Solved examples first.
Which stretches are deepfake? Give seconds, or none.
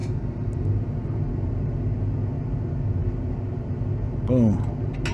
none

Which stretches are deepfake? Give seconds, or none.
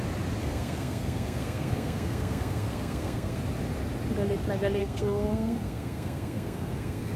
0.4-3.4 (codec, SNAC); 4.8-7.2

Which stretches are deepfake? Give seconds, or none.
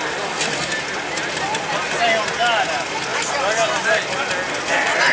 none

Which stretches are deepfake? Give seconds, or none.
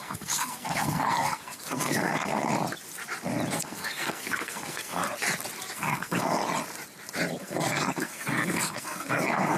0.0-2.5 (codec, SNAC); 3.5-5.0; 5.7-6.4; 7.4-9.6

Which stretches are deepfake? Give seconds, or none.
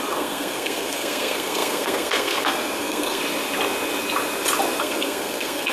0.0-3.2 (codec, SNAC); 4.8-5.7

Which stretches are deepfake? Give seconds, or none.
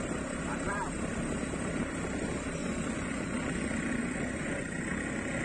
2.6-3.3 (vocoder, Vocos); 4.0-4.8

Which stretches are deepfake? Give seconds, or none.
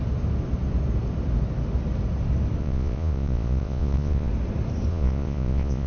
2.6-4.3 (vocoder, Vocos); 4.9-5.9